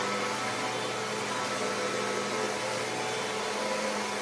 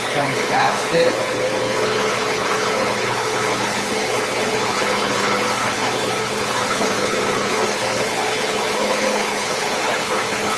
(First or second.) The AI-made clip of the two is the second